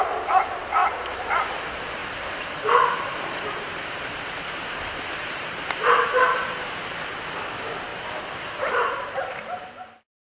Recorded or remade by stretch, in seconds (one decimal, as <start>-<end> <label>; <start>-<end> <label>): 0.0-2.0 recorded; 2.0-7.3 remade; 7.3-7.9 recorded; 7.9-9.7 remade; 9.7-10.3 recorded